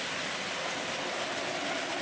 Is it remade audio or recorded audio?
recorded